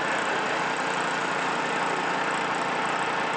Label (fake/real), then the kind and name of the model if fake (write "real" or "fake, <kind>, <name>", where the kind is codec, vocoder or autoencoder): real